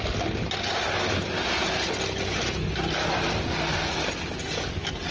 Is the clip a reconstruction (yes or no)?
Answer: no